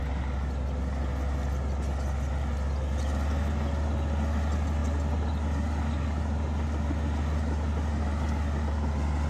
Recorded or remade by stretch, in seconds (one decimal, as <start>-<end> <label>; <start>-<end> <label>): 0.0-9.3 recorded